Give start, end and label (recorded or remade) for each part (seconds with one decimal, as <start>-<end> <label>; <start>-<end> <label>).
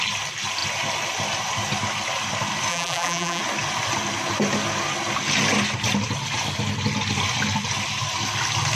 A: 0.0-2.7 recorded; 2.7-3.4 remade; 3.4-8.8 recorded